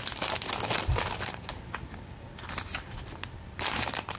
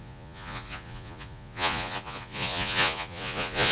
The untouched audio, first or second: first